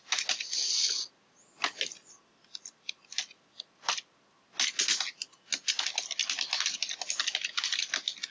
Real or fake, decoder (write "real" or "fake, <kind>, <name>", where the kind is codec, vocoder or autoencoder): real